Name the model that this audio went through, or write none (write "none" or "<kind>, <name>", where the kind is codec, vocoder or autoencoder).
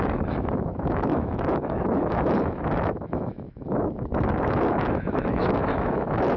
autoencoder, DAC-VAE